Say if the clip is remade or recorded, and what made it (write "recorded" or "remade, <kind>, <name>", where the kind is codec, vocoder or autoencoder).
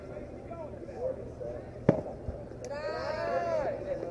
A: recorded